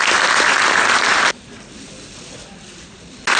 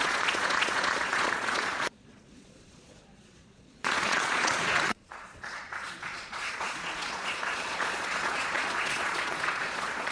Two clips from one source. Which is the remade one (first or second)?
second